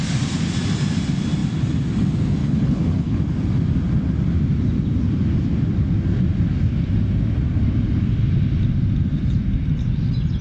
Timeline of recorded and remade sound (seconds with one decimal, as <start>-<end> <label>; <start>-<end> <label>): 0.0-2.4 recorded; 2.4-3.2 remade; 3.2-10.4 recorded